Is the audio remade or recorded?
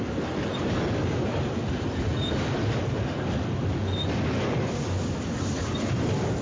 recorded